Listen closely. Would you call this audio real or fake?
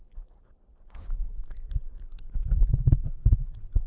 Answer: real